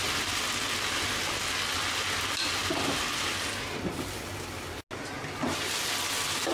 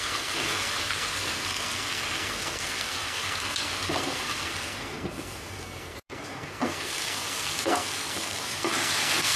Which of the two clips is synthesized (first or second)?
second